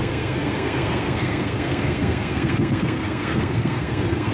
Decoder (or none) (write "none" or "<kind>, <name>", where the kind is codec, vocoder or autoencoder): codec, SNAC